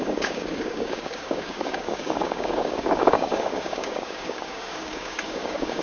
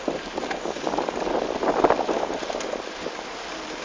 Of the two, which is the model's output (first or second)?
first